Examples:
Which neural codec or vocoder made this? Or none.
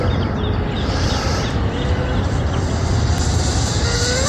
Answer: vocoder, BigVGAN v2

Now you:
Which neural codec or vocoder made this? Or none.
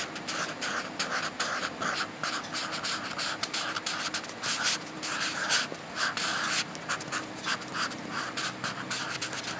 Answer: none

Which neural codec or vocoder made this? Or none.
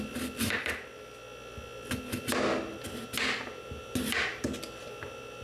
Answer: none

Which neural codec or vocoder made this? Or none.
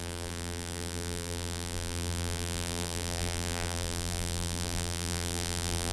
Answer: vocoder, BigVGAN v2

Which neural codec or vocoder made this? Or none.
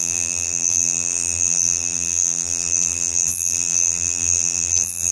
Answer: vocoder, BigVGAN v2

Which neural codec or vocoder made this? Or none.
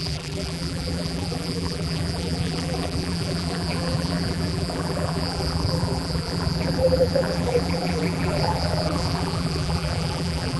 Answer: vocoder, BigVGAN v2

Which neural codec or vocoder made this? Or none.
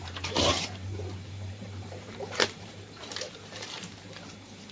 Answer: vocoder, BigVGAN v2